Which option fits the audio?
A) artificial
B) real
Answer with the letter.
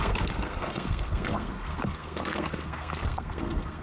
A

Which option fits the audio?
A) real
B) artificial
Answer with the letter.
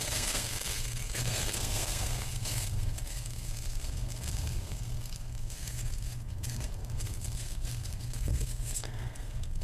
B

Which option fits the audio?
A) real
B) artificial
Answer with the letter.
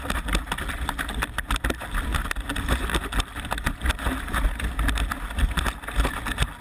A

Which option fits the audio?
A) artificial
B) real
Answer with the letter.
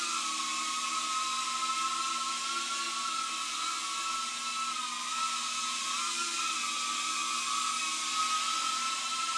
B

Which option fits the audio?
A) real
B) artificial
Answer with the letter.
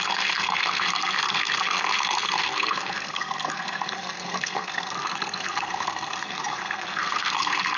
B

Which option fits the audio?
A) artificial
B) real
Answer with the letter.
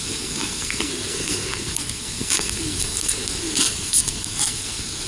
A